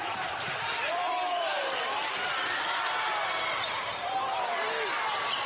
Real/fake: fake